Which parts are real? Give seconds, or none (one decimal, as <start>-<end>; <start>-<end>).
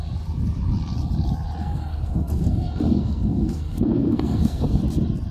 0.0-1.6; 4.8-5.3